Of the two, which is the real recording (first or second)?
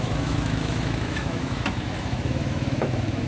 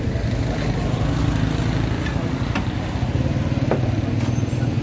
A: second